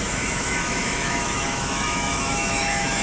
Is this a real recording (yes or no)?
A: no